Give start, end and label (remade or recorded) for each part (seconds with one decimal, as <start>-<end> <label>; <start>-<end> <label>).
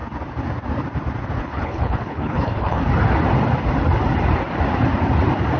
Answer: 0.0-1.4 recorded; 1.4-2.8 remade; 2.8-5.6 recorded